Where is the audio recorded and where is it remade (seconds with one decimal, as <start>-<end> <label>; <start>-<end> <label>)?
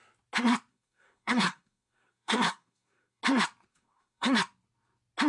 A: 0.0-0.7 recorded; 0.7-3.2 remade; 3.2-3.7 recorded; 3.7-4.4 remade; 4.4-5.3 recorded